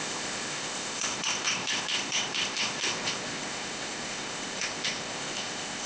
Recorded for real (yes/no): no